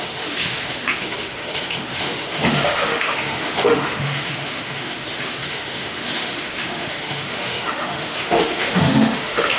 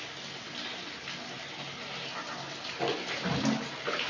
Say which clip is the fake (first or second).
first